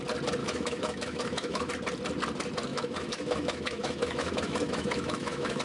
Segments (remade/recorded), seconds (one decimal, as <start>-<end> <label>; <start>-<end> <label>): 0.0-0.4 recorded; 0.4-1.7 remade; 1.7-2.7 recorded; 2.7-5.6 remade